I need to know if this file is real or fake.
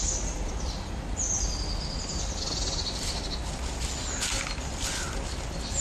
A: real